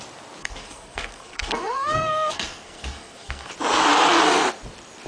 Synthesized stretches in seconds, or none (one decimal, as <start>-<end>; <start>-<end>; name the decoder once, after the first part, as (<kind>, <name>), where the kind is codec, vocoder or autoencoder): 0.4-3.5 (codec, SNAC)